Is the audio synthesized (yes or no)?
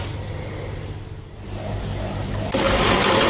no